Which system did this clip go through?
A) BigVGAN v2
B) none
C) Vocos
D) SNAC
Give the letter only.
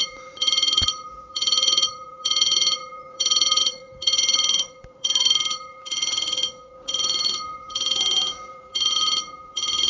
C